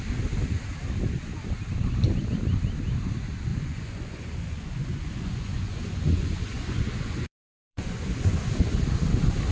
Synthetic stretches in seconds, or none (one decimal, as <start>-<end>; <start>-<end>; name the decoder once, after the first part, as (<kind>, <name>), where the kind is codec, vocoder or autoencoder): 3.5-8.4 (vocoder, Vocos)